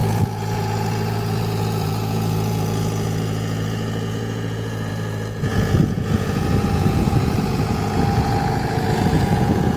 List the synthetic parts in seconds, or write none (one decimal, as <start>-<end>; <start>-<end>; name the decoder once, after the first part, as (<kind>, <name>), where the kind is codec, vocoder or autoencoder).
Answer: 0.0-9.8 (vocoder, Vocos)